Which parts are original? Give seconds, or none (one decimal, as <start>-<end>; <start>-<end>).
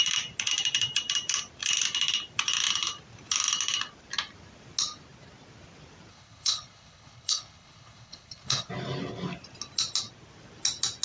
0.0-6.1; 8.7-11.0